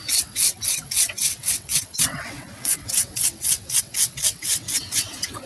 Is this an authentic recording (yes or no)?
no